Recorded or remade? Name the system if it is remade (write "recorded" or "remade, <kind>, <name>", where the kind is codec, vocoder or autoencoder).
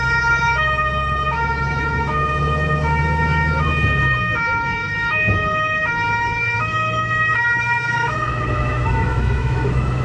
remade, autoencoder, DAC-VAE